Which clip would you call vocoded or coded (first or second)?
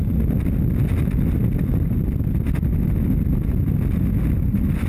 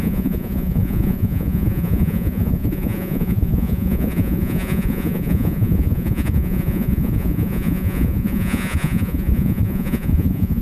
second